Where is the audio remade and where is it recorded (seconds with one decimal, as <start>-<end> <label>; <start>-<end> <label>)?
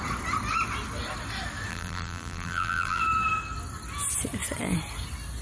0.0-1.7 recorded; 1.7-3.0 remade; 3.0-5.4 recorded